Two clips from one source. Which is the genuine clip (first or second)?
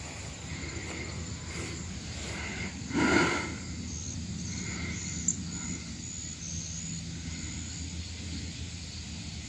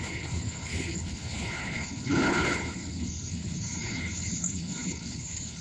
first